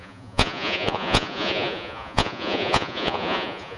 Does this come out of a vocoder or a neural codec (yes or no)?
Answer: yes